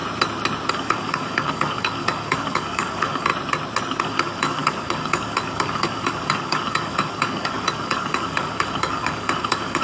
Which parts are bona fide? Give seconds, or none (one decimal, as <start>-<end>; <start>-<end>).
0.0-0.7; 3.3-4.0